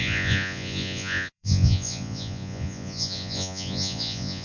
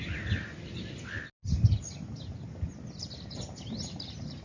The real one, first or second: second